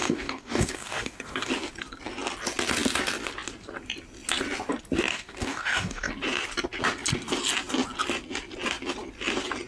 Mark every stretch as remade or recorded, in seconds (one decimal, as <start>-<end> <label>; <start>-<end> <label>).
0.0-1.5 remade; 1.5-5.1 recorded; 5.1-6.1 remade; 6.1-9.7 recorded